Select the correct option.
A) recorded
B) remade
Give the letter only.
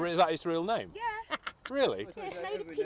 A